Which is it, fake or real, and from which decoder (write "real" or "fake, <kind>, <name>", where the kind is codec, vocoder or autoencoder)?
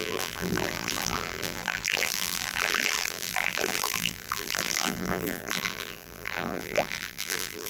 fake, vocoder, BigVGAN v2